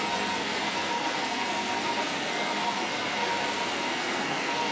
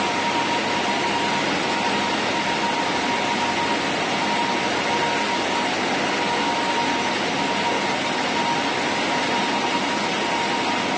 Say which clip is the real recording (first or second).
second